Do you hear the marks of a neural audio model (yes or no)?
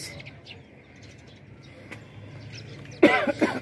no